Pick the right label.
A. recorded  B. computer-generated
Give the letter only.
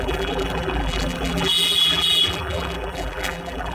B